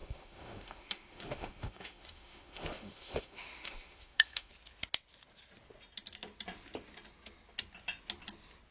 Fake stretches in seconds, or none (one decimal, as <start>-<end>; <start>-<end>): 0.0-4.5